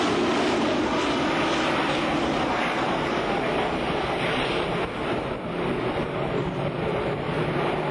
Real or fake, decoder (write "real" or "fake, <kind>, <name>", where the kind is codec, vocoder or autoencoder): real